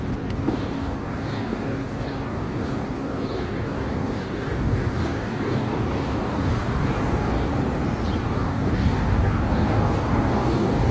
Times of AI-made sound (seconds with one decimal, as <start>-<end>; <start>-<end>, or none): 0.0-7.5; 8.2-10.9